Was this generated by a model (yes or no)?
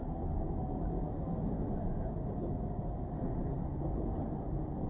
no